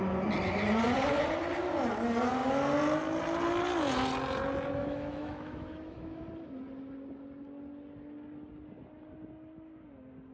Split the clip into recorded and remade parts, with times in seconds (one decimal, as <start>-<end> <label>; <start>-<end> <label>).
0.0-4.8 recorded; 4.8-6.2 remade; 6.2-10.3 recorded